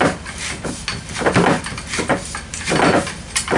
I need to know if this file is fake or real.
real